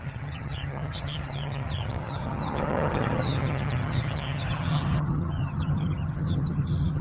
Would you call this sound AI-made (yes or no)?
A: yes